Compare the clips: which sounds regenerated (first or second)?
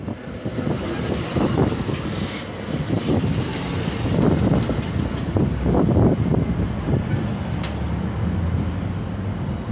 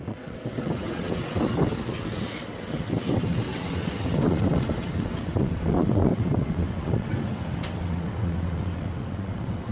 second